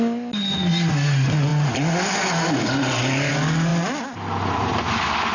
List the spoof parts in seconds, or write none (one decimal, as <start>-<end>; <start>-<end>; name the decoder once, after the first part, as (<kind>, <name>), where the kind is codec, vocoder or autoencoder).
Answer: none